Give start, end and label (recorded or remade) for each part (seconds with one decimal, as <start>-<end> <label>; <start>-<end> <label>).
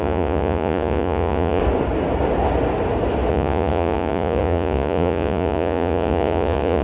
0.0-1.6 remade; 1.6-3.3 recorded; 3.3-6.8 remade